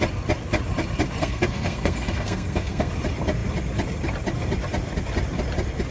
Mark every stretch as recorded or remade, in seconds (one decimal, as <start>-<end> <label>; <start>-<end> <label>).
0.0-1.2 recorded; 1.2-2.9 remade; 2.9-5.9 recorded